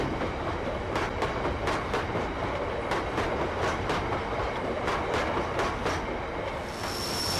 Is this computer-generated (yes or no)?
no